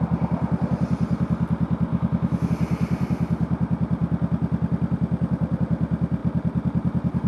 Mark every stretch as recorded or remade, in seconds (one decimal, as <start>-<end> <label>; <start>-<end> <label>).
0.0-1.9 recorded; 1.9-2.5 remade; 2.5-7.3 recorded